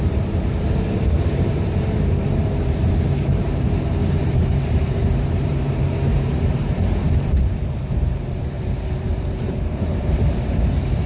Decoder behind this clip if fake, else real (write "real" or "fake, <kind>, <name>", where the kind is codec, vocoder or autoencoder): fake, vocoder, BigVGAN v2